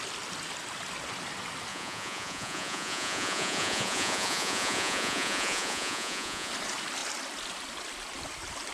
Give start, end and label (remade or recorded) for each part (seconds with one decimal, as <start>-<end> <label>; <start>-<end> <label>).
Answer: 0.0-1.7 recorded; 1.7-6.5 remade; 6.5-8.7 recorded